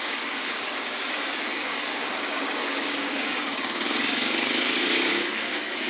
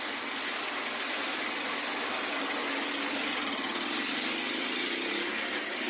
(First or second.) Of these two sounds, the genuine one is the second